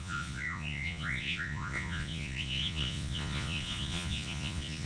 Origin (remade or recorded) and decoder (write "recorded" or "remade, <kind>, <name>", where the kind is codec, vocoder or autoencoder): remade, vocoder, Vocos